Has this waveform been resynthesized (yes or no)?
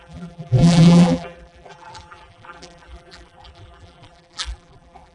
yes